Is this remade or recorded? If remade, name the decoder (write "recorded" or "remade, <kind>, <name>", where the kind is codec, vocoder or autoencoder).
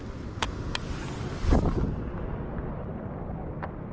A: recorded